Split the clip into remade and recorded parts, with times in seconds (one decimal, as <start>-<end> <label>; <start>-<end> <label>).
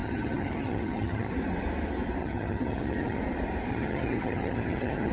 0.0-1.3 remade; 1.3-2.2 recorded; 2.2-3.2 remade; 3.2-3.7 recorded; 3.7-5.1 remade